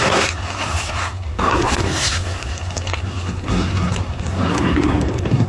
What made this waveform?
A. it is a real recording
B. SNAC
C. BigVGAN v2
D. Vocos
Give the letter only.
B